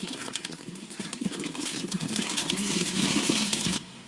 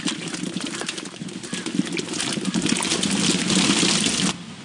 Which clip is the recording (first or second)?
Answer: second